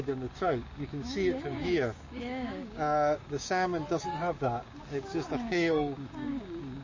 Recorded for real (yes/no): no